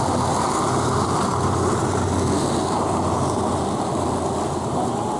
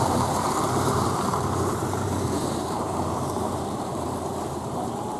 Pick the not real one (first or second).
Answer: second